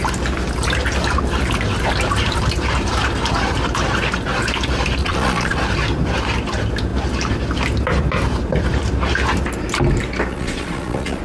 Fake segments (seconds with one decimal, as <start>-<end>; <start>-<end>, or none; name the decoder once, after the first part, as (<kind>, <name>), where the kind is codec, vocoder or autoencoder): 5.0-5.6 (vocoder, Vocos); 10.3-11.2